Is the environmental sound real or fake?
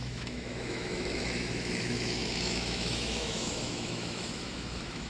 fake